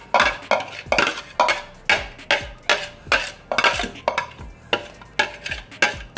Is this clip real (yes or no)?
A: yes